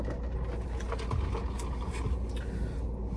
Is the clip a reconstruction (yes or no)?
no